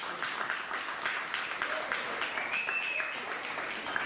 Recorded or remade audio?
recorded